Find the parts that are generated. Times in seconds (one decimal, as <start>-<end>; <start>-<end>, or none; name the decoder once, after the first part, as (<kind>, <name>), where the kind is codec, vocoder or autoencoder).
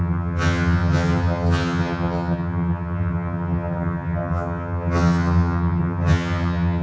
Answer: 0.0-6.8 (vocoder, HiFi-GAN)